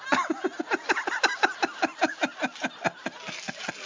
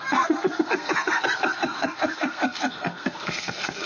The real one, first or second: first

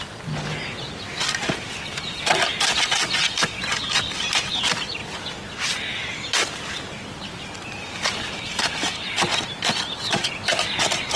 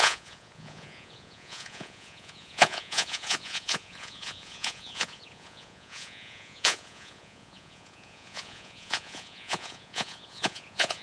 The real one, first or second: first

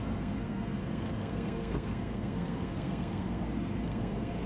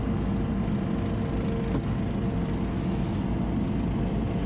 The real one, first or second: second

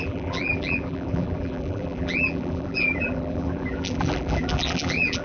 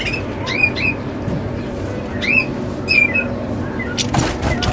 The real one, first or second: second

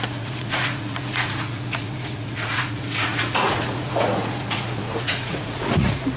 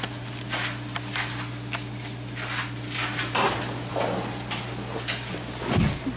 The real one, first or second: second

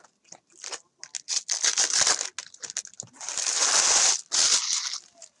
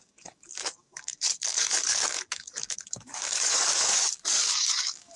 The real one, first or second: first